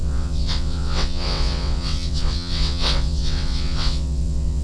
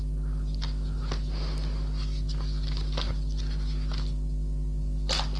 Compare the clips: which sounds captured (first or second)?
second